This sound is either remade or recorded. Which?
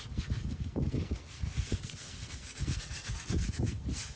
remade